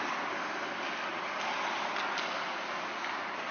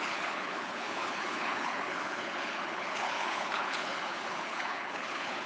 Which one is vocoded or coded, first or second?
second